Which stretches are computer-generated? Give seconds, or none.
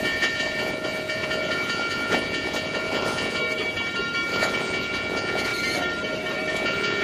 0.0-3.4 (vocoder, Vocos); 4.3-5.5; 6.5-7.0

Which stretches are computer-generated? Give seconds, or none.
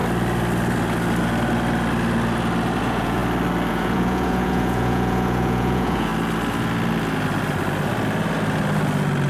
2.8-3.2 (vocoder, Vocos); 3.7-6.1